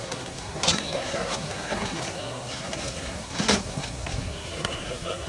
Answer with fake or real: fake